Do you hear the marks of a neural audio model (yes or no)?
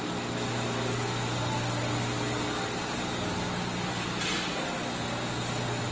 no